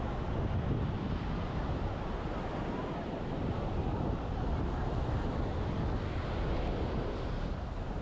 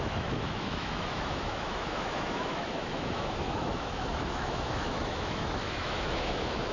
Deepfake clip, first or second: second